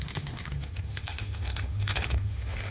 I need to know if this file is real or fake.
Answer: fake